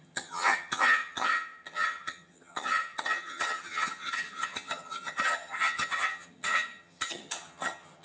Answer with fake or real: fake